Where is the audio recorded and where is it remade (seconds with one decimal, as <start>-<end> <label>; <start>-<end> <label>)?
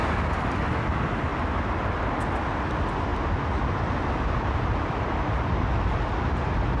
0.0-6.8 recorded